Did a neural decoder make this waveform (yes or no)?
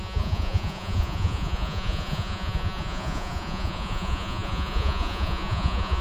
yes